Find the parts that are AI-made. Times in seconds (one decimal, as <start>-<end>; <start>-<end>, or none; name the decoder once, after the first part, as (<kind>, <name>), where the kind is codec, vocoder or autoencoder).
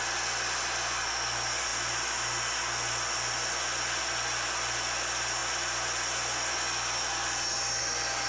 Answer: none